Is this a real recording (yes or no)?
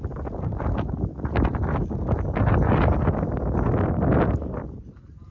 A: yes